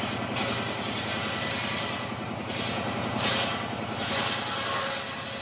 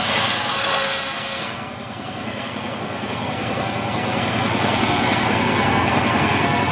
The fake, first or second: second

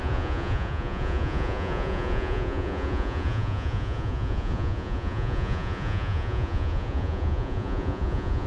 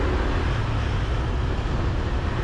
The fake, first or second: first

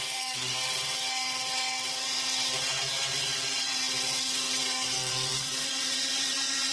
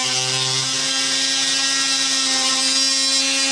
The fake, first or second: first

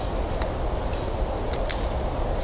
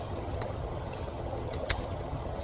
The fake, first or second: second